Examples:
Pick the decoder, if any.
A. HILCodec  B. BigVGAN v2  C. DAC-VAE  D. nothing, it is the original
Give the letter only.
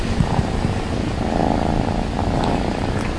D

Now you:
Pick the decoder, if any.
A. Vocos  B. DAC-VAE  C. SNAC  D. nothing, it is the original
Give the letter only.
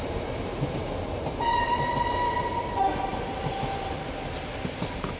D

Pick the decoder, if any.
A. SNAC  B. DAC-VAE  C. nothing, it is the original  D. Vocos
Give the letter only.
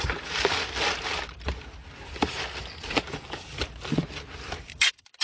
C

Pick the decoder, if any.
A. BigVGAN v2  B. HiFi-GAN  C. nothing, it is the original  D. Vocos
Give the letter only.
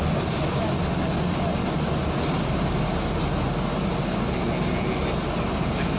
C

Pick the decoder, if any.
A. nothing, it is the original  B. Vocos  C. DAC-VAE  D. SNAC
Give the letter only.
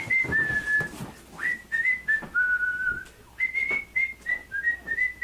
A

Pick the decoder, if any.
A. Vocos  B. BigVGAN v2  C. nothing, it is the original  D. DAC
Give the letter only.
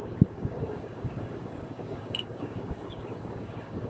D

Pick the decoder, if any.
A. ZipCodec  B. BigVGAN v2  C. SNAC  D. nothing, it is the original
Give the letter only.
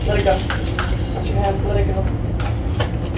D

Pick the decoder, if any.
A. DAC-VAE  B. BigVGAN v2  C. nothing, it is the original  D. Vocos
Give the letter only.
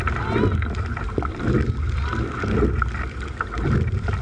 C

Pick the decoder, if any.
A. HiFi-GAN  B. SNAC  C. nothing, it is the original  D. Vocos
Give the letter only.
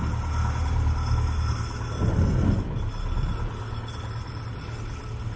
C